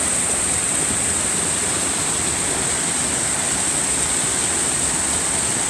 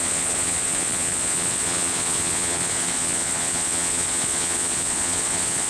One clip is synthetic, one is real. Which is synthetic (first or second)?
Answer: second